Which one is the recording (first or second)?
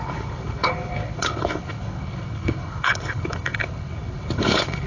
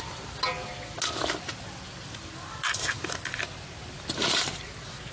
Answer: second